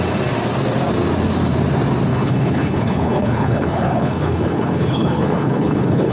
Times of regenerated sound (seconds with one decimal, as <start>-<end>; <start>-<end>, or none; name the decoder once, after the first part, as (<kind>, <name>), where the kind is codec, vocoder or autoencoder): 2.1-6.1 (codec, HILCodec)